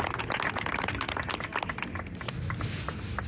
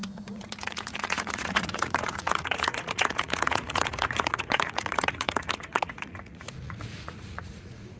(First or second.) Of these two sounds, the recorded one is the first